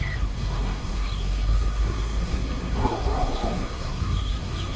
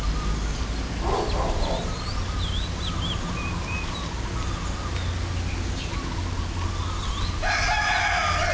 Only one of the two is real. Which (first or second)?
second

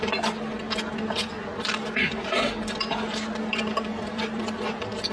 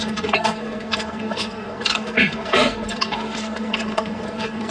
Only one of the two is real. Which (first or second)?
first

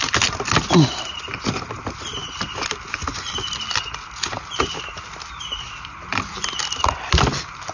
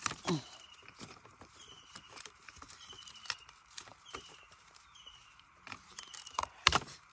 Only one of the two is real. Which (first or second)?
first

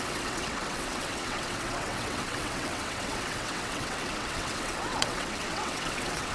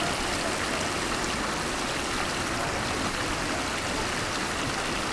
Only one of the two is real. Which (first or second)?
second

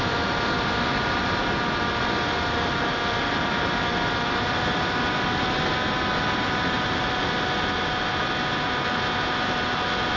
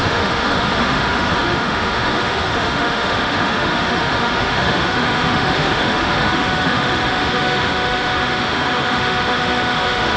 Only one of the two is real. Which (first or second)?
first